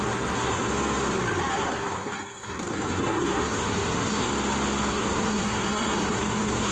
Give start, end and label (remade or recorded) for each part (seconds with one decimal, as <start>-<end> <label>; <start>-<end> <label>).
0.0-0.7 remade; 0.7-1.5 recorded; 1.5-4.3 remade; 4.3-4.9 recorded; 4.9-6.7 remade